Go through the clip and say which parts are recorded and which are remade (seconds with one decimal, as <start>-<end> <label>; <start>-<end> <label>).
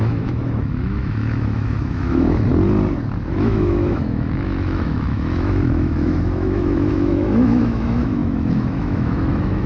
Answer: 0.0-2.5 remade; 2.5-3.3 recorded; 3.3-9.7 remade